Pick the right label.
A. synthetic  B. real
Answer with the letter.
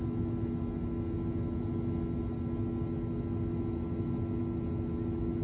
B